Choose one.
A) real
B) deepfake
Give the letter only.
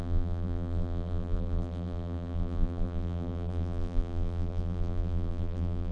B